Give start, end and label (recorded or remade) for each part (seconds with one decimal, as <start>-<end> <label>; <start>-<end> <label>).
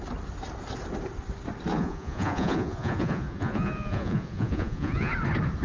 0.0-1.7 recorded; 1.7-5.1 remade; 5.1-5.6 recorded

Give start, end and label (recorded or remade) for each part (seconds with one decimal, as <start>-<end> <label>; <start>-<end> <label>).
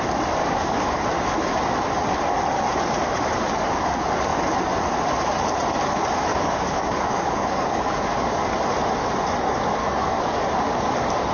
0.0-0.4 recorded; 0.4-1.0 remade; 1.0-6.3 recorded; 6.3-8.5 remade; 8.5-9.8 recorded; 9.8-10.5 remade; 10.5-11.3 recorded